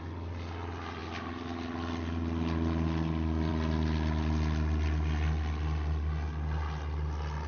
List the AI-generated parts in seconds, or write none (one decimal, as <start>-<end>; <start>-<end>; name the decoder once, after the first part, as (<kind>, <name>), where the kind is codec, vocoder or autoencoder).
none